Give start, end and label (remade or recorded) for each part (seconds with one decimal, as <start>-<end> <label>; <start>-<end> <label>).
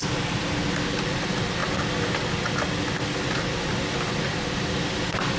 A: 0.0-5.4 recorded